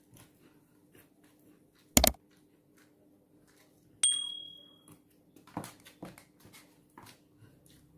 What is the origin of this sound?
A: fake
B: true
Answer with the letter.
B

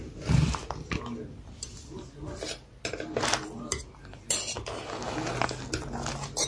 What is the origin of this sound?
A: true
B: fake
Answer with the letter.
A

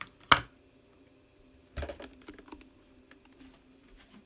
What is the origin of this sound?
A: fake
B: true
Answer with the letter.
B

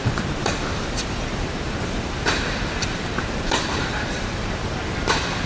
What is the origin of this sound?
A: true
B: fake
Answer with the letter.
B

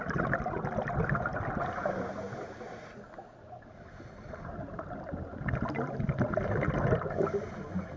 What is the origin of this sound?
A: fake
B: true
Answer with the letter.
B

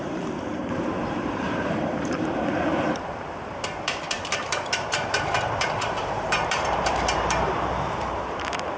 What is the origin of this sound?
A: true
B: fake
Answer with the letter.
B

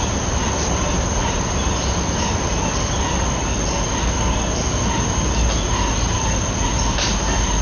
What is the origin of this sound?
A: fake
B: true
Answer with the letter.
B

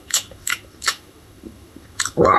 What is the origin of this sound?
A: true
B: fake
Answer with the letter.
B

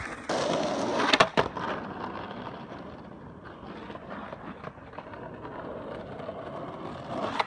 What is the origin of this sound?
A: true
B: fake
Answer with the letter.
A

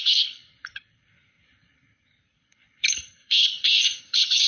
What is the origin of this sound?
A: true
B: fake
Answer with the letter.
B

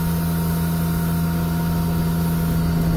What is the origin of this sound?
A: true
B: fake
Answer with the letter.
A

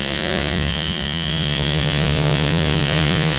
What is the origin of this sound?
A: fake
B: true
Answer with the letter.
A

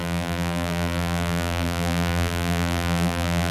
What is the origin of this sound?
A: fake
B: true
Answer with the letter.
A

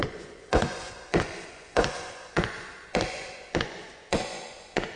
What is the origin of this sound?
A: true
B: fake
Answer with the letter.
B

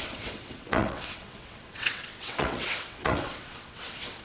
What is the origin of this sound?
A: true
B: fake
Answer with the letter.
B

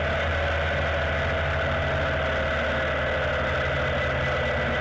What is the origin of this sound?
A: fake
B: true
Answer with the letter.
B